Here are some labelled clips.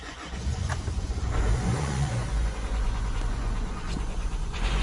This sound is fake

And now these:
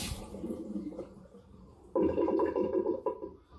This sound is fake